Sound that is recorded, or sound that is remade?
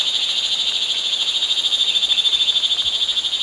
recorded